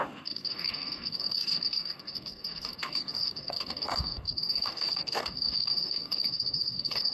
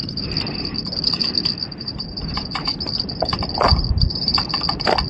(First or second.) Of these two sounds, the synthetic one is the first